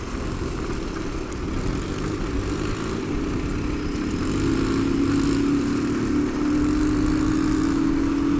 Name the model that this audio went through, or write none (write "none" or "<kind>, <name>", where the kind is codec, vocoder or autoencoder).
none